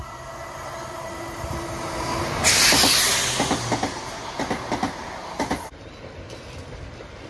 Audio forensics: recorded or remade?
recorded